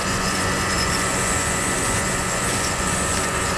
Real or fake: fake